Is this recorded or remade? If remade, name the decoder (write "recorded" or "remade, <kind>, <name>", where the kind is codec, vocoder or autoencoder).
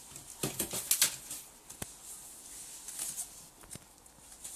recorded